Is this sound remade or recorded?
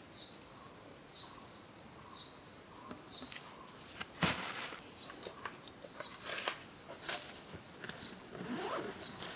recorded